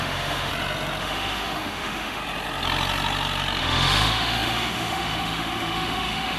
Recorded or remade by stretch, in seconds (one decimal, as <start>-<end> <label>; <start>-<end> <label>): 0.0-0.5 remade; 0.5-1.0 recorded; 1.0-2.2 remade; 2.2-3.6 recorded; 3.6-6.4 remade

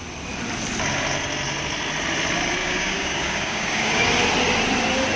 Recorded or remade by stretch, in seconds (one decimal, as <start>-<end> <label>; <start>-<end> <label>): 0.0-2.6 recorded; 2.6-4.1 remade; 4.1-5.2 recorded